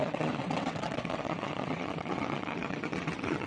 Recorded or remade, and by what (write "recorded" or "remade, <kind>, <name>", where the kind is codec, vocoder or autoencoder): remade, vocoder, WaveNeXt